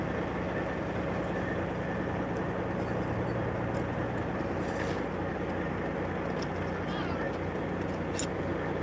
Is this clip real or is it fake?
real